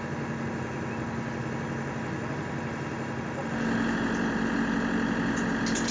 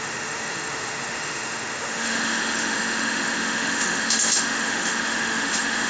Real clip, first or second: first